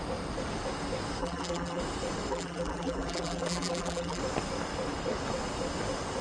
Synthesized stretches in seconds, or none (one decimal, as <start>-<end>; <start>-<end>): 1.2-1.8; 2.3-4.2